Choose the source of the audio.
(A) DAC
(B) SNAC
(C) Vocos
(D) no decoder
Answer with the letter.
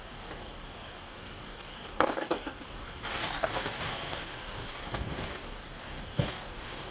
A